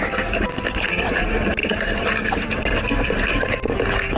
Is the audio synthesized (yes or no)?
yes